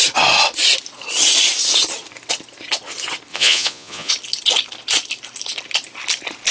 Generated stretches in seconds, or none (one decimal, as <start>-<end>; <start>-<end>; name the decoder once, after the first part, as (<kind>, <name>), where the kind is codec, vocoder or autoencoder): 3.3-4.1 (vocoder, Vocos)